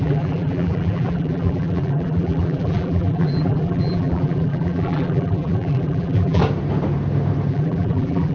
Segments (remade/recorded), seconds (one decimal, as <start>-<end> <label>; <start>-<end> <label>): 0.0-6.4 remade; 6.4-7.5 recorded; 7.5-8.3 remade

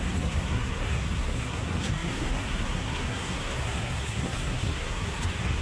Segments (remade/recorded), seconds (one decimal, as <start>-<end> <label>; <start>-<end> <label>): 0.0-5.6 remade

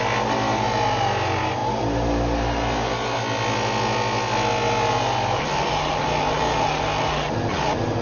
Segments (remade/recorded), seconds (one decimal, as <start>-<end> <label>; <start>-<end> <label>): 0.0-8.0 recorded